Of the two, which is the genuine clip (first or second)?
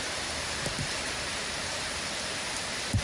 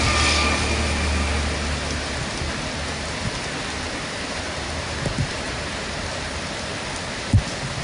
second